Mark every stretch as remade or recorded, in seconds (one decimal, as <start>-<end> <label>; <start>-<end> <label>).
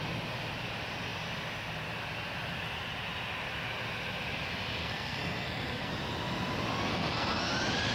0.0-4.8 recorded; 4.8-5.9 remade; 5.9-6.9 recorded; 6.9-7.5 remade; 7.5-7.9 recorded